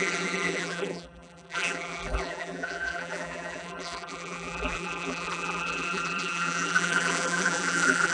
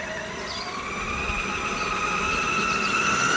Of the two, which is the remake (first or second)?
first